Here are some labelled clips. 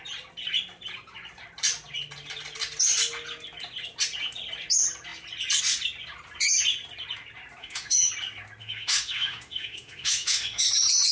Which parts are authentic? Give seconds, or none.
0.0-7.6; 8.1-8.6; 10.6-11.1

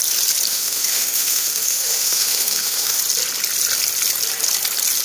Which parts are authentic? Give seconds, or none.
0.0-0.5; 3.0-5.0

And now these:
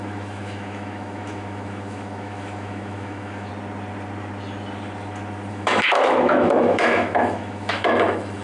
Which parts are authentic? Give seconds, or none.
3.5-5.5

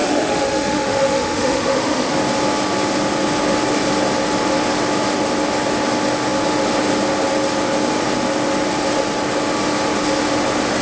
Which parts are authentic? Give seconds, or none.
2.1-10.8

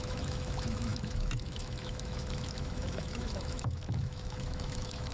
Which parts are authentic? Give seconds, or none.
none

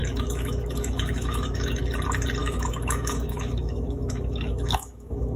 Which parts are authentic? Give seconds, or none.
1.8-2.4

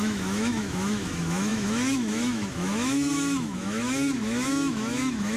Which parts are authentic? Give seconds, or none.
none

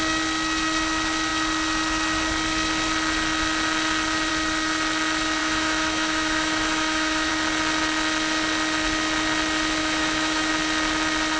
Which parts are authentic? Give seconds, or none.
0.0-5.4; 7.3-9.8; 10.5-11.4